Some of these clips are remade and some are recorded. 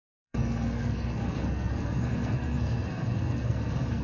remade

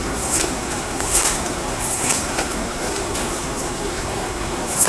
remade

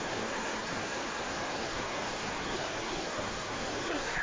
remade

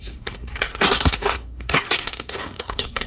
remade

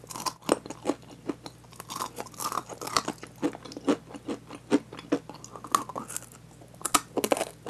recorded